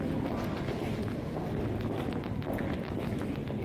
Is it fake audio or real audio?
real